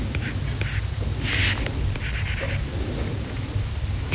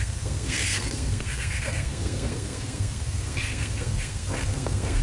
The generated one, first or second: second